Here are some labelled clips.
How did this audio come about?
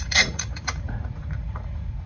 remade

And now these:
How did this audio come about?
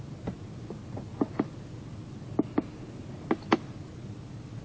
recorded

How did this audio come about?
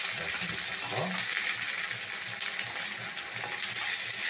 recorded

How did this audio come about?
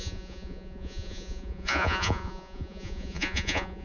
remade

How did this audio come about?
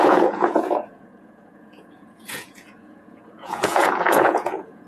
remade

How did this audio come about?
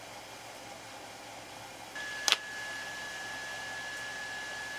recorded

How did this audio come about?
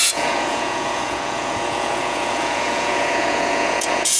remade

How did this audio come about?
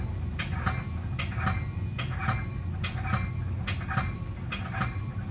recorded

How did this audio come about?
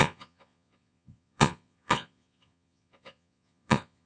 remade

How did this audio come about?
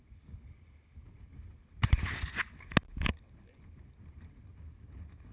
recorded